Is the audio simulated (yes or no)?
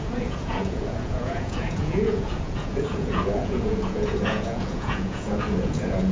yes